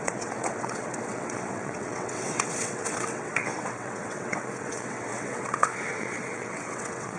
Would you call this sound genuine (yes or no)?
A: no